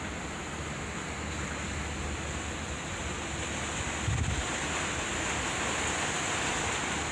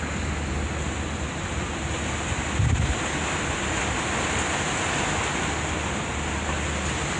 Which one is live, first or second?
second